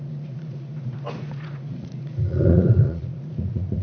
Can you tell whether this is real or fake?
fake